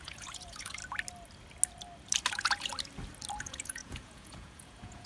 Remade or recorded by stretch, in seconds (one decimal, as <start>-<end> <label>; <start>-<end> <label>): 0.0-0.8 remade; 0.8-2.3 recorded; 2.3-2.7 remade; 2.7-3.4 recorded; 3.4-5.1 remade